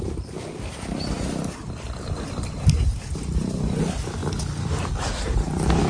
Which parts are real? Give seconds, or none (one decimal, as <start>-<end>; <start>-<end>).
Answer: 0.0-5.9